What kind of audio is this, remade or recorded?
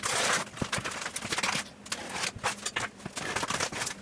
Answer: recorded